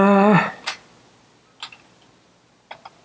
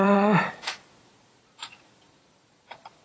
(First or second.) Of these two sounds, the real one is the first